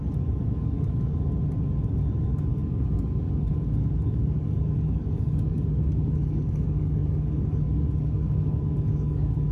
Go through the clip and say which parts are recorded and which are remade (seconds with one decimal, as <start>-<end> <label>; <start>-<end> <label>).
0.0-1.3 remade; 1.3-2.2 recorded; 2.2-9.5 remade